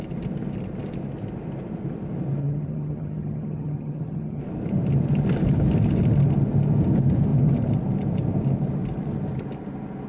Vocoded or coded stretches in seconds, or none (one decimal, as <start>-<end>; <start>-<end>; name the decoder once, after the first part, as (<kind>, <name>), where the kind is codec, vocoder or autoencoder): 2.4-4.4 (vocoder, HiFi-GAN)